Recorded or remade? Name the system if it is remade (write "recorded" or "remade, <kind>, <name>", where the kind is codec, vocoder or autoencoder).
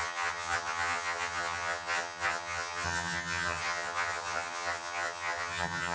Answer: remade, vocoder, HiFi-GAN